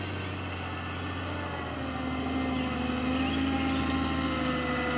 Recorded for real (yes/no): yes